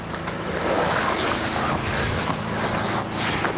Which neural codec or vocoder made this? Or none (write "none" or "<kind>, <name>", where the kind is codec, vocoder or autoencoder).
none